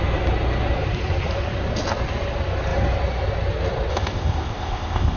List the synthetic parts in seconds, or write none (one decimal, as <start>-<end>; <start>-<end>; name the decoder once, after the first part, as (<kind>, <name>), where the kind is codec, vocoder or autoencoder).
3.9-5.2 (codec, ZipCodec)